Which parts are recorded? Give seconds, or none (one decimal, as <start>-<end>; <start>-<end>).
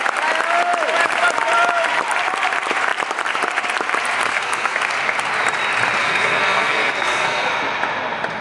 0.0-4.3; 4.9-6.0; 7.5-8.4